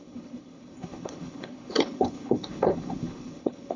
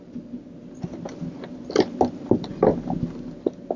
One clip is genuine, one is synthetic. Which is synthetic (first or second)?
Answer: first